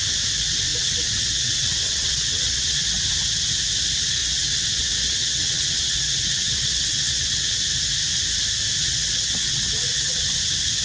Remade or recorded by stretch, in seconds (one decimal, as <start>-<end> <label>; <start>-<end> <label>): 0.0-0.7 recorded; 0.7-3.0 remade; 3.0-4.2 recorded; 4.2-7.6 remade; 7.6-8.8 recorded; 8.8-10.3 remade; 10.3-10.8 recorded